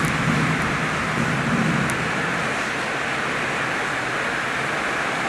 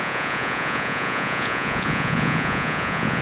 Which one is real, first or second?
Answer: first